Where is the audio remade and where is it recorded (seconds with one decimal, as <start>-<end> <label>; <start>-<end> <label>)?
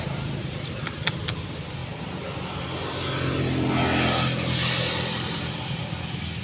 0.0-6.4 recorded